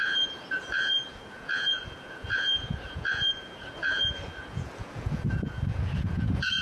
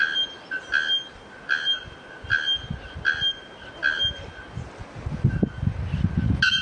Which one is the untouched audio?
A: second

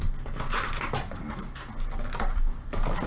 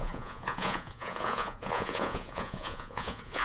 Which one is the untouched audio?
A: first